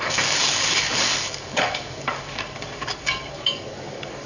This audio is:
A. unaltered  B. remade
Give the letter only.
B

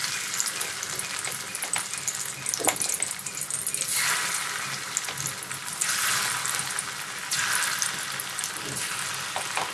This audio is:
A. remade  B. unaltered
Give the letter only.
B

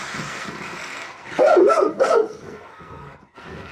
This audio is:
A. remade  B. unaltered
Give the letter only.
A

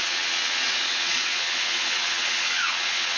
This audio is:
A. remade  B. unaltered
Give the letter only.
A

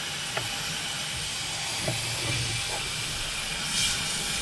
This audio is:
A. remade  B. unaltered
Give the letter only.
B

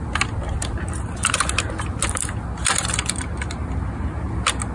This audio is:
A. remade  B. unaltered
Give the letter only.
B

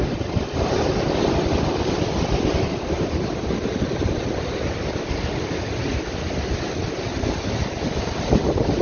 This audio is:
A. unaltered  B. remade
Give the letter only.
A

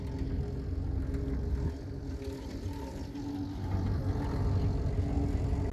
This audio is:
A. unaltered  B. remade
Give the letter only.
A